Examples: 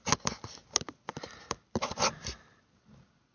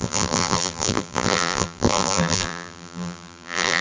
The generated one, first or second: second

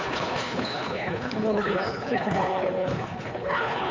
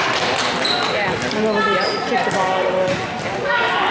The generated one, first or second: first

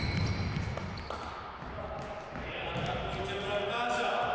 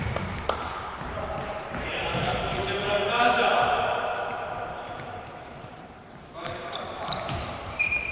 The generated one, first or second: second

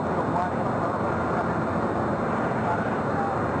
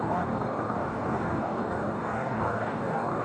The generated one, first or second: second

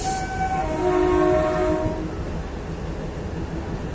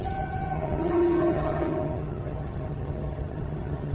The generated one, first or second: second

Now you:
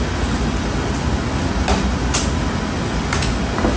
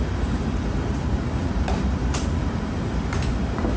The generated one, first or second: second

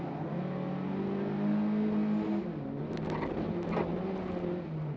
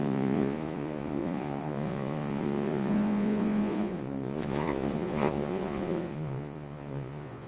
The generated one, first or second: second